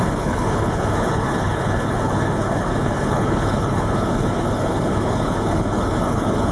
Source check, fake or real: fake